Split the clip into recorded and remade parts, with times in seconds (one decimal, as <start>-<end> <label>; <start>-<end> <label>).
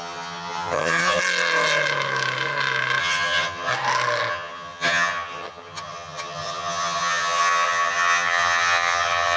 0.0-1.2 remade; 1.2-3.0 recorded; 3.0-3.7 remade; 3.7-4.3 recorded; 4.3-9.4 remade